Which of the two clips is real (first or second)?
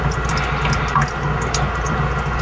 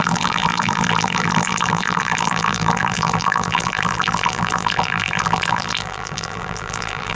first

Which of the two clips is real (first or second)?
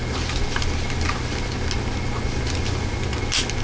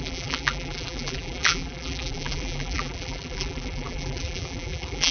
first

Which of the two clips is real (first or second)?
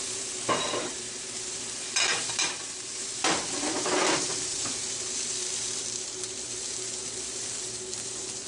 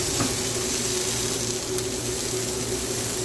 second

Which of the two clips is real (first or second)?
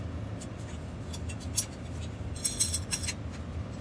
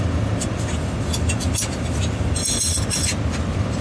first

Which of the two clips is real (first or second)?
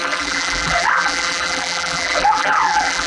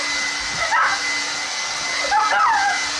second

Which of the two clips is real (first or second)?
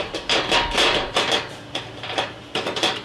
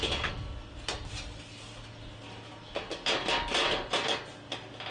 second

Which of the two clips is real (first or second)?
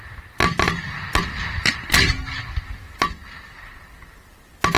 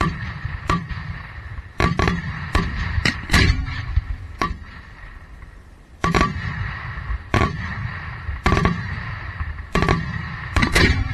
first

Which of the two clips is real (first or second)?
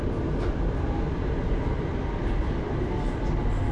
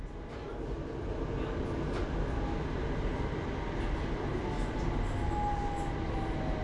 second